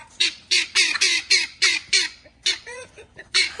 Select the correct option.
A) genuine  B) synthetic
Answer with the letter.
B